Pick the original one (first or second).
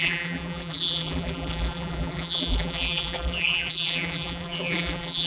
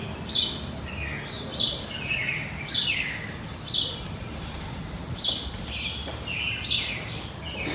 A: second